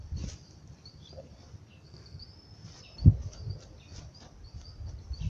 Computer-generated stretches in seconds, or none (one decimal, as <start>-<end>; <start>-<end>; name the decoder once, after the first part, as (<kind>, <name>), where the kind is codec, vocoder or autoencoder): 1.7-2.2 (codec, SNAC)